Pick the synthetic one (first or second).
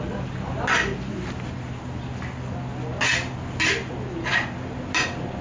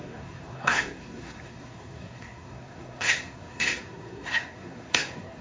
second